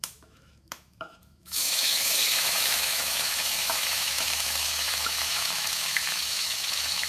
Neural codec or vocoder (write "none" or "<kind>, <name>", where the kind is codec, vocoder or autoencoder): autoencoder, DAC-VAE